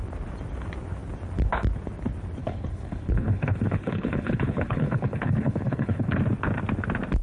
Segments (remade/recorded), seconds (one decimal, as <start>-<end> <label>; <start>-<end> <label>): 0.0-2.4 recorded; 2.4-6.2 remade; 6.2-7.2 recorded